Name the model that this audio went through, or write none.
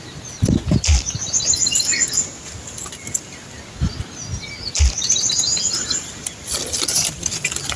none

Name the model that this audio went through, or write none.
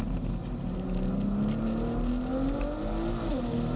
none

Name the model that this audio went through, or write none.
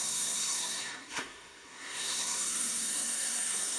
codec, SNAC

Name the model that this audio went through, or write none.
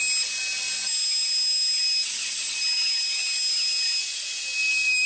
none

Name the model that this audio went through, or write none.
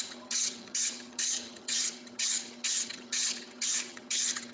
vocoder, HiFi-GAN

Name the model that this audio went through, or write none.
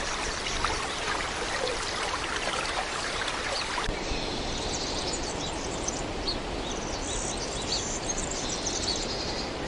vocoder, BigVGAN v2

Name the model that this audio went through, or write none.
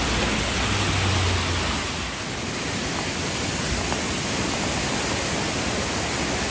none